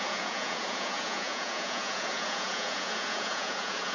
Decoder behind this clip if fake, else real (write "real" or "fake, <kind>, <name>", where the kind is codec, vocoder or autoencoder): fake, vocoder, Vocos